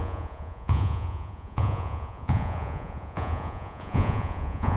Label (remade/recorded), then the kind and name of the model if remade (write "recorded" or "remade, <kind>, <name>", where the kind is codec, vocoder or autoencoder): remade, vocoder, Vocos